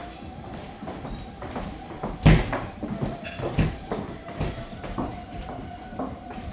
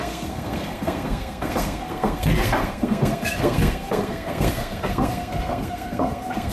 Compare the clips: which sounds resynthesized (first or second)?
second